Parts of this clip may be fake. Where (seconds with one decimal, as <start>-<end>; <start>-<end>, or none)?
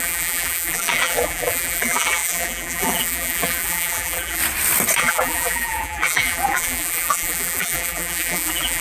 0.0-4.4; 5.0-8.8